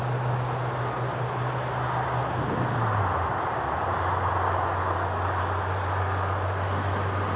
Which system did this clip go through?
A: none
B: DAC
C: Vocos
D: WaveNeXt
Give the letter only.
A